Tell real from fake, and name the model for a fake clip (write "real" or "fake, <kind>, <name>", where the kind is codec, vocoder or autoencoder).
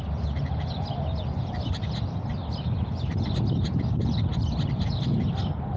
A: real